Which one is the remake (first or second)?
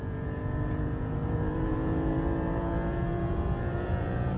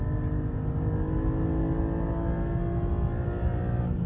first